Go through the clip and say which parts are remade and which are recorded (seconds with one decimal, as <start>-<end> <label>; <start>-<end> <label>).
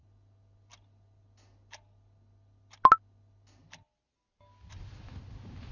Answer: 0.0-5.7 recorded